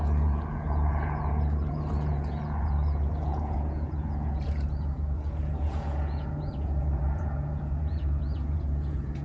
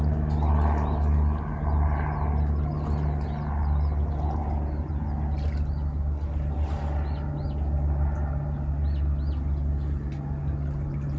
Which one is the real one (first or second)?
second